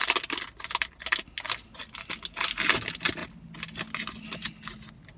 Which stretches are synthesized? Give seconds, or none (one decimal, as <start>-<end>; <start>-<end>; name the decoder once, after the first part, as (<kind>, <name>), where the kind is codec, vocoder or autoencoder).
none